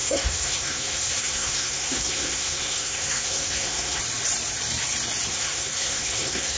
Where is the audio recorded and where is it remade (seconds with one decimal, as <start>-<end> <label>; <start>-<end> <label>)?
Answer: 0.0-4.0 remade; 4.0-5.3 recorded; 5.3-6.6 remade